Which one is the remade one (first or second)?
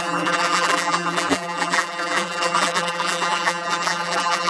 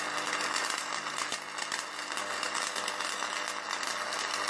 first